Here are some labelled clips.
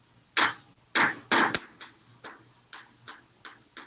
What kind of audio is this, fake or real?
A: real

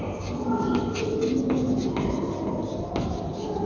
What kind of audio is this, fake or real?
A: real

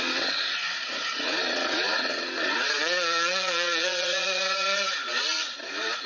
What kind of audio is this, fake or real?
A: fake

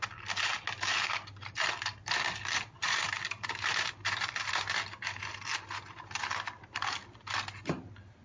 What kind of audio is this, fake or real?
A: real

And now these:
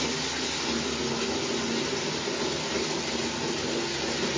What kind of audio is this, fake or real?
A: real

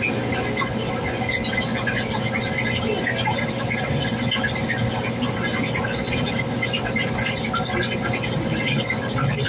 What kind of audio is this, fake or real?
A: real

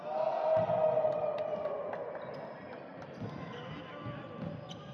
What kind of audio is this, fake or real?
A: real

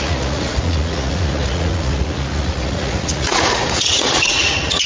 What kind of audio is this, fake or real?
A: fake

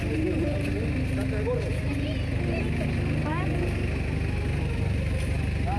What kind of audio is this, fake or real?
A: real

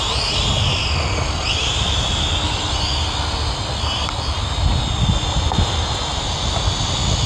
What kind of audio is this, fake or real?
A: real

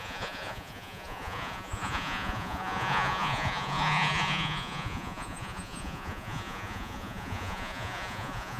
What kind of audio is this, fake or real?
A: fake